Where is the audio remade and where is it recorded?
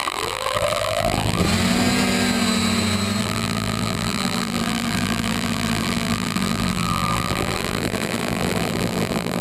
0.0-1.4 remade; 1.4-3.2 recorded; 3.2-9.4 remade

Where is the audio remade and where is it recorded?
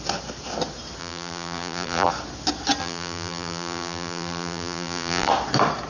0.0-1.0 recorded; 1.0-2.1 remade; 2.1-2.8 recorded; 2.8-5.3 remade; 5.3-5.9 recorded